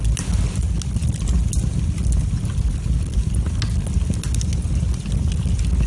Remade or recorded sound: recorded